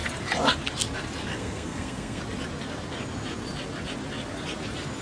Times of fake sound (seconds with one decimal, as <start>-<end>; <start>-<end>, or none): 1.3-2.2